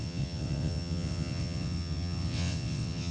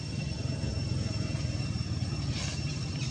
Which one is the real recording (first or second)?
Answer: second